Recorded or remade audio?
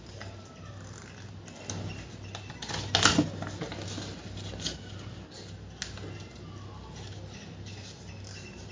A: recorded